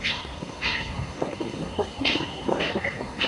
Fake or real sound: fake